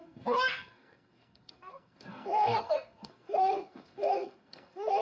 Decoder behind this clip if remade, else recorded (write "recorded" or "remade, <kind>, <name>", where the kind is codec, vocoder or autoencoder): remade, codec, SNAC